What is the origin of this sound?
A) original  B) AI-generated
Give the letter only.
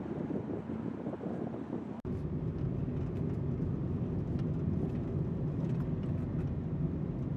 A